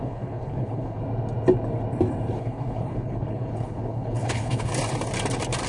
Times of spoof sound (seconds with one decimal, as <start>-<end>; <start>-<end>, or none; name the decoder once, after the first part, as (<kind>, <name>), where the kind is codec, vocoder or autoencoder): 0.0-1.0 (codec, HILCodec); 2.4-4.7